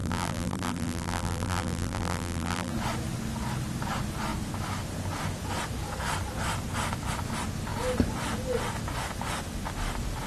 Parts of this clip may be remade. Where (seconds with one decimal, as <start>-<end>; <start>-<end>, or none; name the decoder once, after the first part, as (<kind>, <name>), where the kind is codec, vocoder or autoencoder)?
0.0-2.7 (vocoder, BigVGAN v2)